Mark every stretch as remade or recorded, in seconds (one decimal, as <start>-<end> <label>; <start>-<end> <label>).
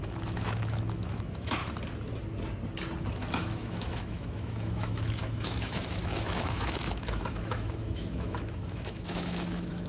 0.0-1.6 remade; 1.6-3.1 recorded; 3.1-9.9 remade